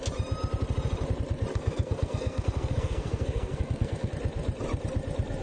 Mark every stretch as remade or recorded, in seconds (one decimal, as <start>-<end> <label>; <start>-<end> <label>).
0.0-1.5 recorded; 1.5-4.1 remade; 4.1-5.4 recorded